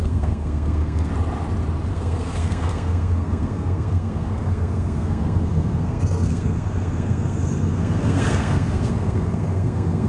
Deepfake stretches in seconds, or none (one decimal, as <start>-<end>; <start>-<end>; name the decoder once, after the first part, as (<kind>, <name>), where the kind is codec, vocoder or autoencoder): 0.0-1.1 (codec, SNAC); 1.9-10.1